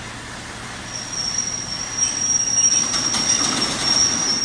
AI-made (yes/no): no